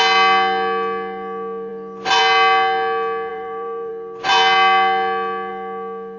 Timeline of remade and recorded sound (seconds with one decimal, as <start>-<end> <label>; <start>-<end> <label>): 0.0-3.3 recorded; 3.3-3.9 remade; 3.9-6.2 recorded